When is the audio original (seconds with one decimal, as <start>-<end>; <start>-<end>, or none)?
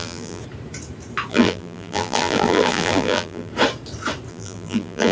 0.4-1.3; 3.5-4.3